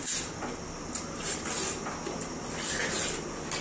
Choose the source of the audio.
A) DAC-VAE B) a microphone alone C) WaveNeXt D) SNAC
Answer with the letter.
B